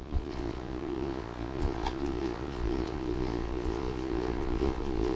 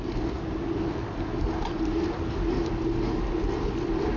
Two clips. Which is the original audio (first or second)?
second